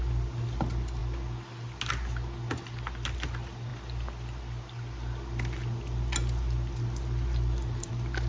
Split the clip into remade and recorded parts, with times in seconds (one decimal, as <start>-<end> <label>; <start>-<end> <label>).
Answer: 0.0-8.3 recorded